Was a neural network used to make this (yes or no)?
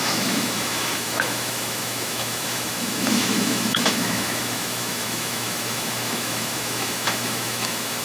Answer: yes